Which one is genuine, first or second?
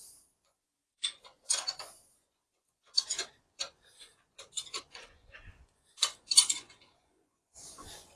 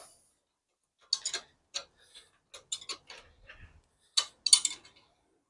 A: second